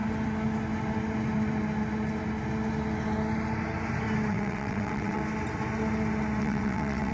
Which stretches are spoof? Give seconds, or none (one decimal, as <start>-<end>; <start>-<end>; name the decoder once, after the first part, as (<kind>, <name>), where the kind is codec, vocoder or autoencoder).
4.3-5.2 (vocoder, WaveNeXt); 6.4-7.1